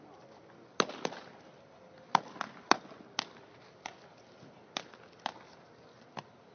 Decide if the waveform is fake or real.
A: real